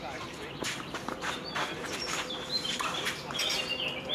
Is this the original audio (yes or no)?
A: no